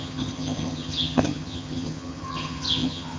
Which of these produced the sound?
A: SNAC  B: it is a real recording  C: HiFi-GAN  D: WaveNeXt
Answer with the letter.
C